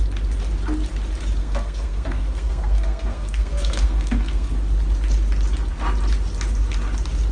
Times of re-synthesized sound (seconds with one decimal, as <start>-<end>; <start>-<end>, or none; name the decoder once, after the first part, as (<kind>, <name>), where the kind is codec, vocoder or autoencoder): 1.4-4.5 (codec, SNAC)